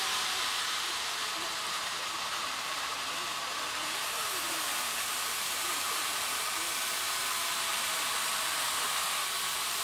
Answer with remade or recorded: remade